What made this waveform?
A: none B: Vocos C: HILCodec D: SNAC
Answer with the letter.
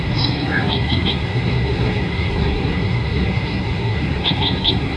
D